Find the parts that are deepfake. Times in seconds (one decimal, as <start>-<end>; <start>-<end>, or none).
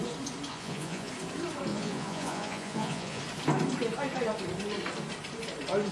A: 0.5-1.1; 1.7-3.2